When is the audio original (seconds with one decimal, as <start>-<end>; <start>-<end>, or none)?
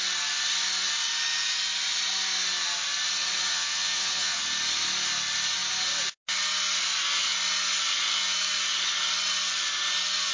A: 0.0-3.5; 4.4-10.3